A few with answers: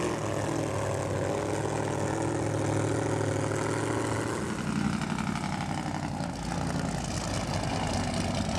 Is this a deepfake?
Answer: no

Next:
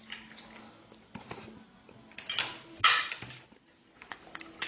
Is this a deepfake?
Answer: no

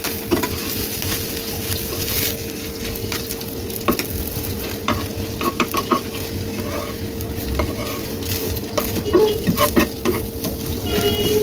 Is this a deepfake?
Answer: no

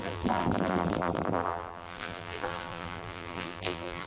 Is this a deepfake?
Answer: yes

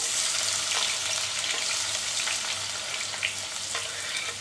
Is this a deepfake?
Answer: no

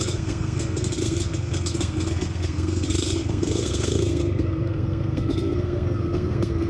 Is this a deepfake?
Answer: yes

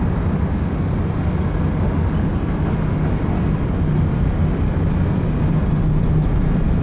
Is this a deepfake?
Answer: no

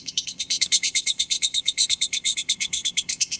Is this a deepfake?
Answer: yes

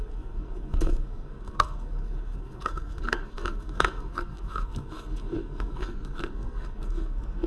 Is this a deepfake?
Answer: yes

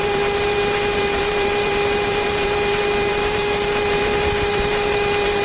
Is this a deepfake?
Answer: yes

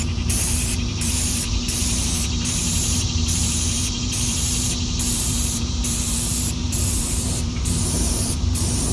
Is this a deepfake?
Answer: yes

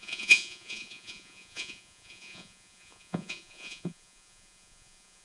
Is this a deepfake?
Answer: yes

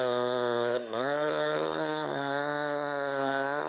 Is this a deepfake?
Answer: yes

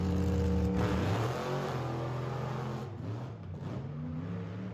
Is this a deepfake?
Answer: no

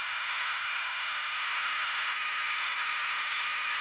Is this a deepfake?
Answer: yes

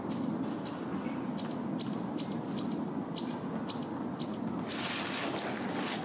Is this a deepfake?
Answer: no